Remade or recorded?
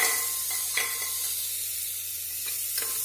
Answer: recorded